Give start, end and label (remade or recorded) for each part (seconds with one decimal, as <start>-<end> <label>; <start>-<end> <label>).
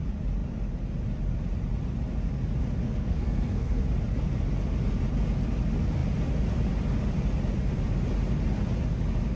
0.0-2.8 recorded; 2.8-3.8 remade; 3.8-9.4 recorded